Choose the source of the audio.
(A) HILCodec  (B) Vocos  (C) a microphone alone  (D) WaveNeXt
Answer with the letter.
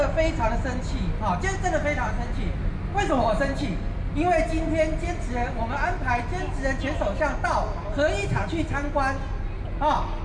C